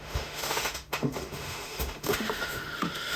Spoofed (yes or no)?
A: yes